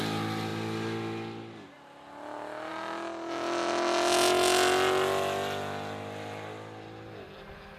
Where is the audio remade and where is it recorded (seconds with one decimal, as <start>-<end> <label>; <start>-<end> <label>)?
0.0-7.8 recorded